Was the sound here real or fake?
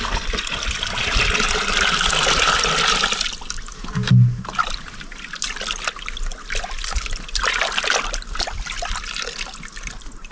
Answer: real